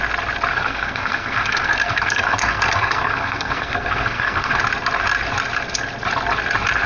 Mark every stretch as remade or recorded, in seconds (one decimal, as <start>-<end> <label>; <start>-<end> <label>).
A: 0.0-0.5 recorded; 0.5-4.6 remade; 4.6-6.9 recorded